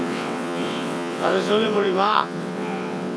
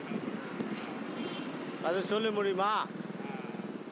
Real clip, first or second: second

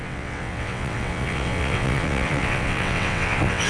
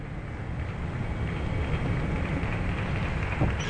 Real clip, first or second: second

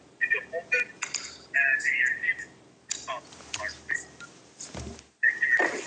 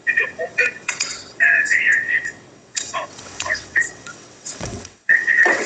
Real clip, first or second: first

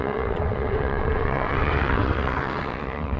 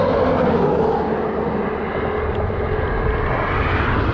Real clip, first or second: second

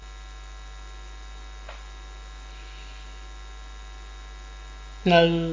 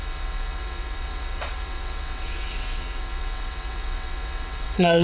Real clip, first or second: first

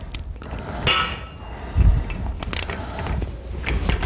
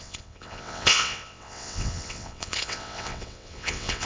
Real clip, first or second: first